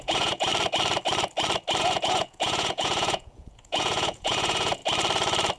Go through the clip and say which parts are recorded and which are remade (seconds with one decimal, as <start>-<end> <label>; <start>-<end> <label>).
0.0-0.5 remade; 0.5-1.8 recorded; 1.8-4.8 remade; 4.8-5.6 recorded